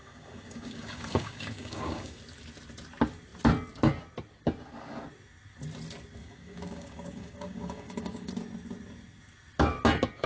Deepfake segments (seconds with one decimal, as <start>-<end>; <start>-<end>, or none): 0.0-2.2; 6.2-8.3